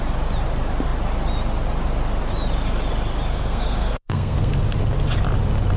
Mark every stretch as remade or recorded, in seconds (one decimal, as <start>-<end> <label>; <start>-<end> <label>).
0.0-3.3 recorded; 3.3-4.5 remade; 4.5-5.8 recorded